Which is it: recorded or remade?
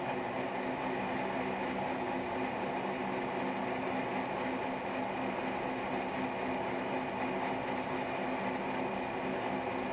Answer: recorded